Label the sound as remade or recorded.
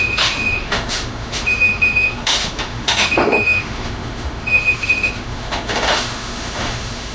remade